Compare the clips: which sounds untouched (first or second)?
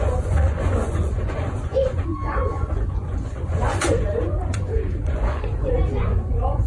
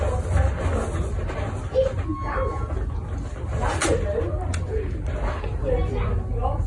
second